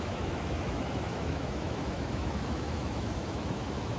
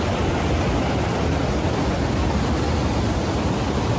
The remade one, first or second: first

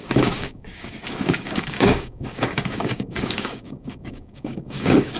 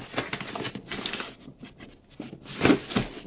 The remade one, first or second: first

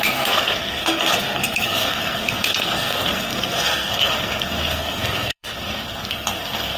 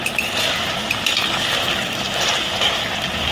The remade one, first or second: first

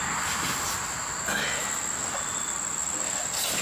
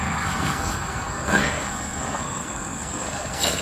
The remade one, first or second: second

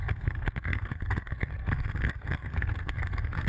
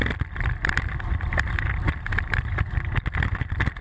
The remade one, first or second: first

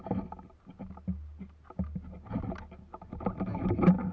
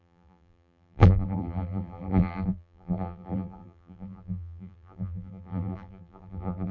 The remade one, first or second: second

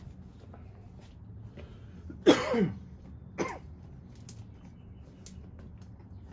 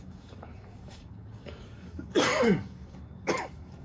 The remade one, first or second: second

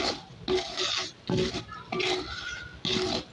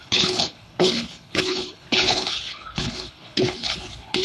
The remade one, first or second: second